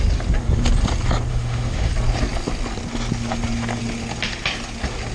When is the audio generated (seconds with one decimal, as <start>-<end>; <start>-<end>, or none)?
1.3-1.9